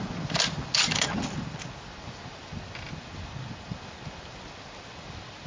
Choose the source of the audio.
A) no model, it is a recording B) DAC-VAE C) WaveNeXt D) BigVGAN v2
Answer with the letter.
A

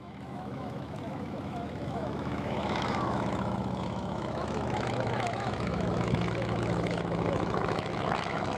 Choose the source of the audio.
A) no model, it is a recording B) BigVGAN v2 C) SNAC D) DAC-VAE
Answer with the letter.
D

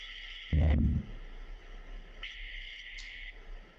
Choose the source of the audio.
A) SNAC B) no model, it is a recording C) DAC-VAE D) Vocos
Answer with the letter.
B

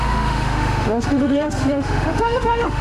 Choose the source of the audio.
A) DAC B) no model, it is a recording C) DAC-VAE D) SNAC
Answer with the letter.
C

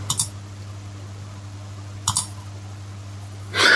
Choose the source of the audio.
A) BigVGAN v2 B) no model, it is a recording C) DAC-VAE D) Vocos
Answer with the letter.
B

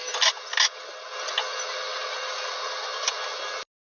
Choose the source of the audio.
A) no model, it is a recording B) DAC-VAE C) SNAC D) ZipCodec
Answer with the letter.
A